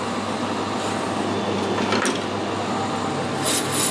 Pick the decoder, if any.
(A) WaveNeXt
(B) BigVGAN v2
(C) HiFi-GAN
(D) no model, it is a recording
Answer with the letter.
D